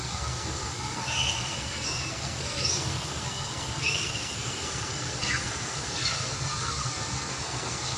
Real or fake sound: fake